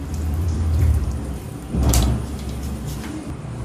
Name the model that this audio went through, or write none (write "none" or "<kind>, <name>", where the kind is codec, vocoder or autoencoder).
vocoder, BigVGAN v2